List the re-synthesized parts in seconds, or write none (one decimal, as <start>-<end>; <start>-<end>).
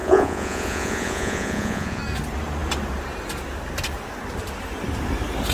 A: 0.0-2.0